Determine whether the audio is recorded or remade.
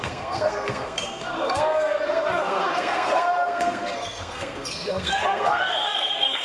remade